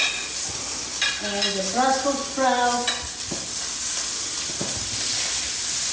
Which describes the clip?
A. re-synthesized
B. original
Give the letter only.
B